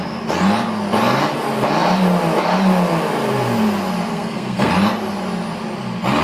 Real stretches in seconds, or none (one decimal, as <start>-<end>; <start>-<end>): 0.0-4.1; 4.7-6.2